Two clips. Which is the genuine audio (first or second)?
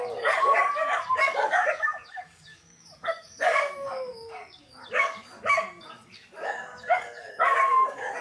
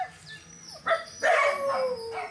second